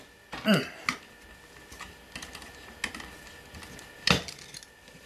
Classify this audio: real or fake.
real